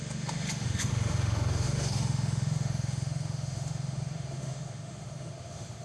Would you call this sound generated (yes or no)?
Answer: yes